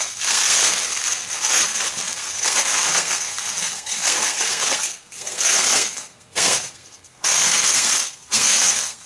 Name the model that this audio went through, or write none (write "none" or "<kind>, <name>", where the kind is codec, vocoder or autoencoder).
codec, SNAC